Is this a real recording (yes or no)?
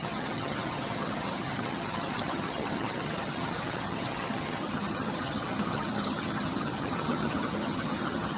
no